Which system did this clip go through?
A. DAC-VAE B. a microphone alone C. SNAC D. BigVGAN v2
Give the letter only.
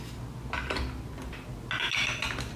B